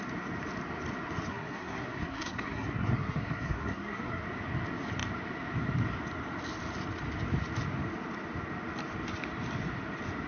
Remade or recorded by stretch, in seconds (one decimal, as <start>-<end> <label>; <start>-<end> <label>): 0.0-1.3 recorded; 1.3-4.2 remade; 4.2-10.3 recorded